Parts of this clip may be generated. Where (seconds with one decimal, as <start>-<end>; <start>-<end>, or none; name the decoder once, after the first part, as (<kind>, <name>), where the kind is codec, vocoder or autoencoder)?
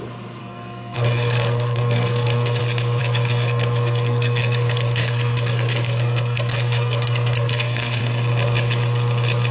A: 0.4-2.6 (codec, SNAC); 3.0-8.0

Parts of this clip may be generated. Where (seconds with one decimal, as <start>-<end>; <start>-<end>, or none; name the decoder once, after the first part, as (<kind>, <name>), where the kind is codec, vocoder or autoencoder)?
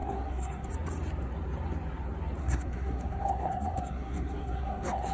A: 0.0-0.7 (codec, SNAC); 2.4-5.1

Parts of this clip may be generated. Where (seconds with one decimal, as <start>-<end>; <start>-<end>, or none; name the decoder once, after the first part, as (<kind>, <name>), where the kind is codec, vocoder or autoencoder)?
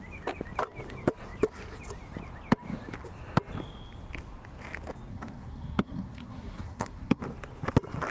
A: 5.1-7.2 (codec, SNAC)